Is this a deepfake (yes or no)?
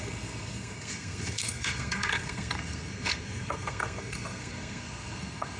yes